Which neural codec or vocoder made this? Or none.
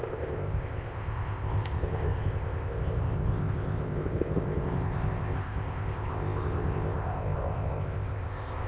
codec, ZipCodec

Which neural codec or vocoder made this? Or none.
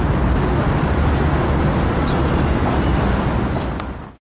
none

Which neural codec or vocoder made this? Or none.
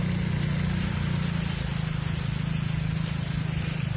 none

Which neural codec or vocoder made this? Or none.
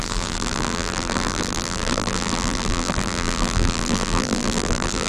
vocoder, BigVGAN v2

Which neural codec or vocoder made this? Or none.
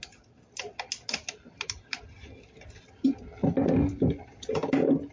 none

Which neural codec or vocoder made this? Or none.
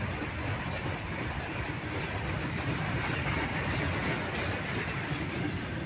none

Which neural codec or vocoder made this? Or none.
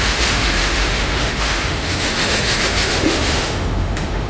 autoencoder, DAC-VAE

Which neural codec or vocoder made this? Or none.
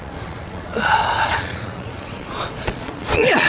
vocoder, Vocos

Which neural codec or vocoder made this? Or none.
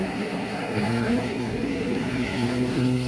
codec, SNAC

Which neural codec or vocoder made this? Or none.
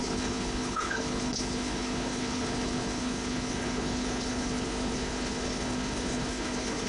codec, HILCodec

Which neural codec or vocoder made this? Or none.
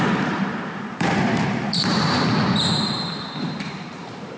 vocoder, BigVGAN v2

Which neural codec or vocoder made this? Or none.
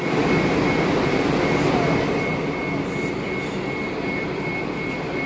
none